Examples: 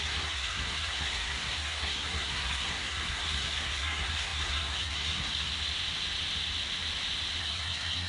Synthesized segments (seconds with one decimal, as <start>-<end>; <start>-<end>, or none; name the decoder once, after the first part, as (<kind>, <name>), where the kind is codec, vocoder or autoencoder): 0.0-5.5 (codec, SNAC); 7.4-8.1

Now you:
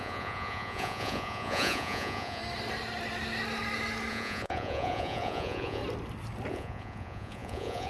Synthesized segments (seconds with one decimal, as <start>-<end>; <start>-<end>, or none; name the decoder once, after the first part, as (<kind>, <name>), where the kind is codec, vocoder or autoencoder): 0.0-2.4 (vocoder, Vocos); 4.1-5.8; 6.5-7.9

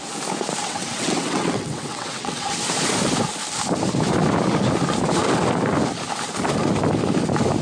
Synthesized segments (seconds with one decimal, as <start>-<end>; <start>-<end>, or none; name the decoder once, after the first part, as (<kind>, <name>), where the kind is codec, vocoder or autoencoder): 0.6-2.5 (vocoder, WaveNeXt)